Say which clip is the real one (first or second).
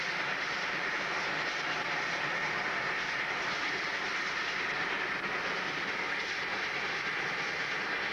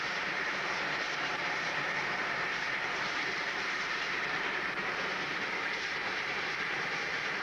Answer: first